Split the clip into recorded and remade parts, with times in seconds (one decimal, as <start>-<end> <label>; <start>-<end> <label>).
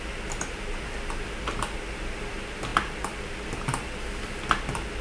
0.0-5.0 recorded